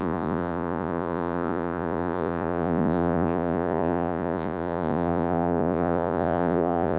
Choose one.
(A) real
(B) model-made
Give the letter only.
B